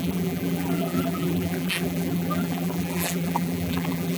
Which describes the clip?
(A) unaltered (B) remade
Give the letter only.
B